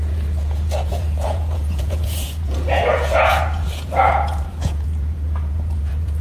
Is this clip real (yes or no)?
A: no